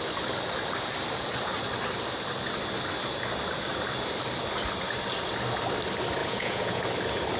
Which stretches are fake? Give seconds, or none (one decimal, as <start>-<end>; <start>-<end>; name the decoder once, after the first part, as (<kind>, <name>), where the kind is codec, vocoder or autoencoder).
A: 6.2-6.8 (vocoder, Vocos)